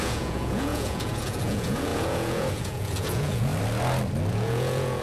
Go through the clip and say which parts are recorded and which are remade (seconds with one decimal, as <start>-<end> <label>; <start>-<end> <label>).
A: 0.0-3.5 remade; 3.5-4.3 recorded; 4.3-5.0 remade